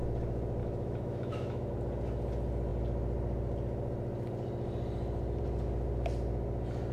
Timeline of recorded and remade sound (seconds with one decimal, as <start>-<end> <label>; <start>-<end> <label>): 0.0-0.6 recorded; 0.6-1.7 remade; 1.7-6.9 recorded